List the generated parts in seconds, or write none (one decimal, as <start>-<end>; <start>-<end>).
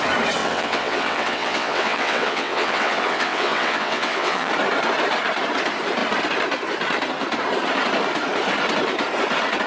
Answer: 0.4-4.5